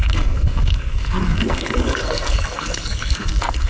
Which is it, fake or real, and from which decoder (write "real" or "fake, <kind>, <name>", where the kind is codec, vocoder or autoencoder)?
fake, codec, SNAC